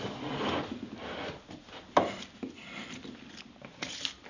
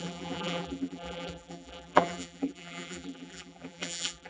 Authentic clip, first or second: first